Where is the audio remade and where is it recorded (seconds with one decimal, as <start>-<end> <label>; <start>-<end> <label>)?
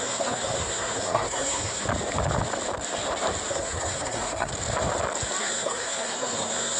0.0-1.8 remade; 1.8-3.5 recorded; 3.5-4.5 remade; 4.5-5.4 recorded; 5.4-6.8 remade